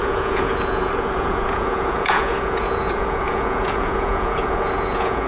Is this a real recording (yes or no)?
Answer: no